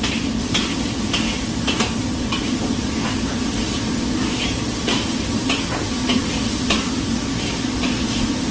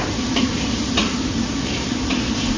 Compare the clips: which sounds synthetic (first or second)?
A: second